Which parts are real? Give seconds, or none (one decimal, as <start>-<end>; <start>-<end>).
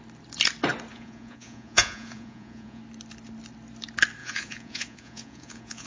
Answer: 0.0-0.9; 2.8-4.2